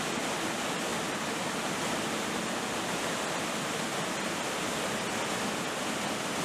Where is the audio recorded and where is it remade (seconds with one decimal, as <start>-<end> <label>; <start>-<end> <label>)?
0.0-6.4 recorded